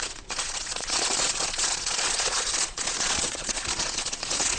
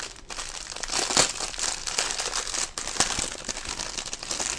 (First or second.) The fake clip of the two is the first